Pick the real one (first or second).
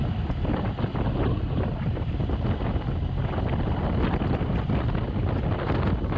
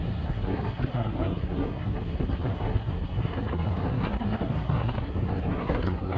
first